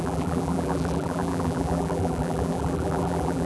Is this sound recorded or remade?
remade